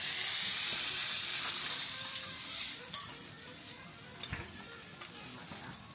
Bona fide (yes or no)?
no